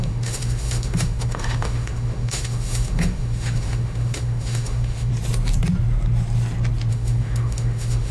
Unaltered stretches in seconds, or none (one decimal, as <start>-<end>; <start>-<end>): 5.1-6.9